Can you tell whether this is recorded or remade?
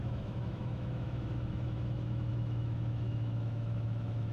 remade